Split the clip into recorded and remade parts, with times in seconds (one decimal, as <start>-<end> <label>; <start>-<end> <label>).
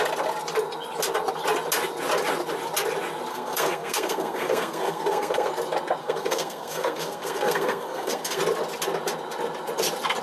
0.0-3.3 recorded; 3.3-5.5 remade; 5.5-6.0 recorded; 6.0-8.4 remade; 8.4-10.2 recorded